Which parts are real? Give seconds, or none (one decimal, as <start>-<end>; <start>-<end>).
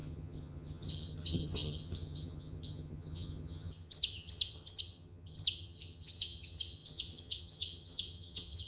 none